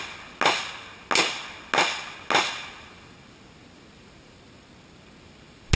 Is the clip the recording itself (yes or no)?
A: yes